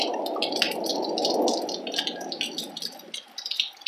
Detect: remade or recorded recorded